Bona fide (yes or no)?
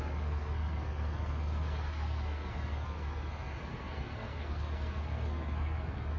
no